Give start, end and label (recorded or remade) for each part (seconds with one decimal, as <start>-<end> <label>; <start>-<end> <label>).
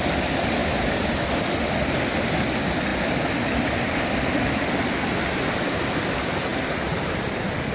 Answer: 0.0-7.7 recorded